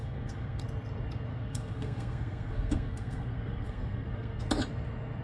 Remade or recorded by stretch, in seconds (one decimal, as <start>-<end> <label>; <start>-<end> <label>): 0.0-0.6 remade; 0.6-1.3 recorded; 1.3-4.4 remade; 4.4-5.2 recorded